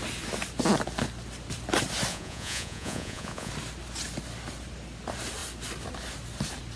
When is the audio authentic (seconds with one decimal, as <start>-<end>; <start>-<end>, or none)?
0.0-2.1; 3.5-6.8